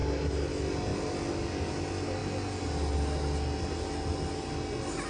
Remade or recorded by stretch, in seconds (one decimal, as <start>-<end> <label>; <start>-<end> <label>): 0.0-5.1 recorded